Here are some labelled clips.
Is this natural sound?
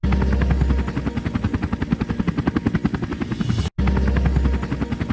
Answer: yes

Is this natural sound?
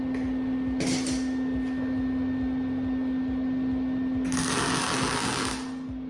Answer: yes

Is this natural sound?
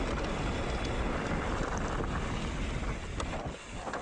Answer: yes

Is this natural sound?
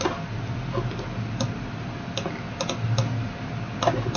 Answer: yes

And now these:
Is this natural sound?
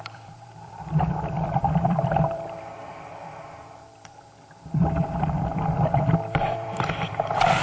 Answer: no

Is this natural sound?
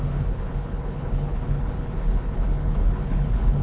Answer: no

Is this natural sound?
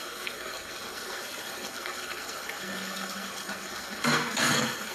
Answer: no